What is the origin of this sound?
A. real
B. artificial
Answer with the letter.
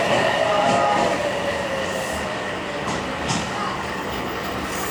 B